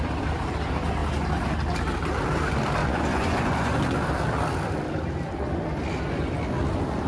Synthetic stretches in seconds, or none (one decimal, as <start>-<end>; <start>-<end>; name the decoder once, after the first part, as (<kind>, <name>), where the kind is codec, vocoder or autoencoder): 2.8-3.8 (vocoder, Vocos)